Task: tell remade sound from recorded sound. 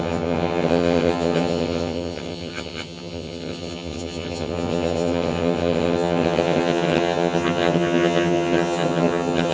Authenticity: remade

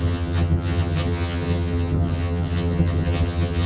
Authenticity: remade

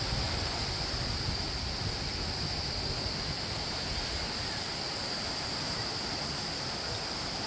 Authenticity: recorded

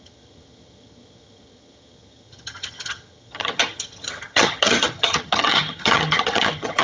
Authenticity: remade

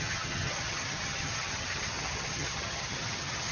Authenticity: remade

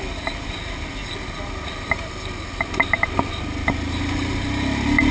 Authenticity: recorded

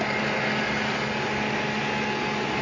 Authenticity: recorded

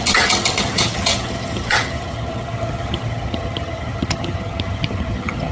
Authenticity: remade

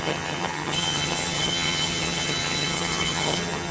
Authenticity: remade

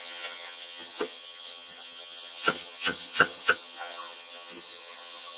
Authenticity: remade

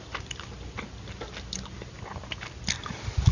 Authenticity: recorded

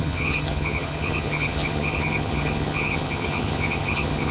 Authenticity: remade